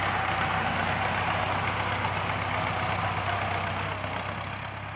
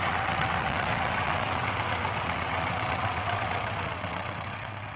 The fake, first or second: second